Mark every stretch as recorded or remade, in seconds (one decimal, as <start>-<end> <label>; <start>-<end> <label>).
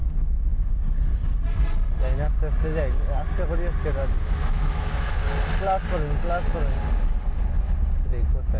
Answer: 0.0-0.7 remade; 0.7-4.0 recorded; 4.0-5.2 remade; 5.2-8.6 recorded